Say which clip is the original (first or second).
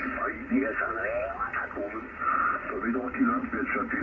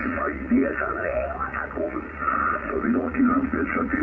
first